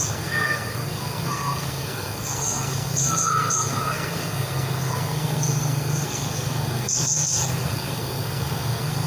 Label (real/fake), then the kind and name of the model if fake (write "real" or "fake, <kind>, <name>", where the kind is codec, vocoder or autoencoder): fake, codec, SNAC